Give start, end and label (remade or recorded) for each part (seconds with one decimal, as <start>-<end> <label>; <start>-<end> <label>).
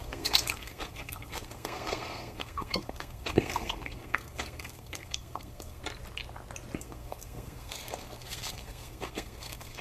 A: 0.0-5.8 remade; 5.8-6.8 recorded; 6.8-9.8 remade